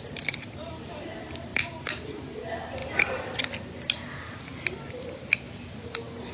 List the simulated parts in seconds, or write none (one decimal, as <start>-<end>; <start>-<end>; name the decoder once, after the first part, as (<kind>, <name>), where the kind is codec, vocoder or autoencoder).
none